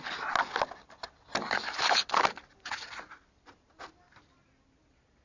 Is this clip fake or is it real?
real